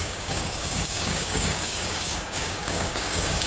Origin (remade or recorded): remade